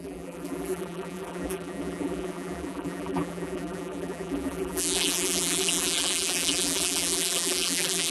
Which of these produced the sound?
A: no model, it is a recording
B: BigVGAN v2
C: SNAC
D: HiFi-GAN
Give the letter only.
B